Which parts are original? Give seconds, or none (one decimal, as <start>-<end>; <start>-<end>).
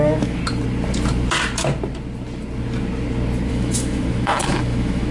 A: 0.4-3.5